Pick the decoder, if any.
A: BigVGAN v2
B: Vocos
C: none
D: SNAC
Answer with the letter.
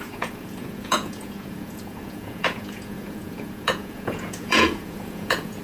B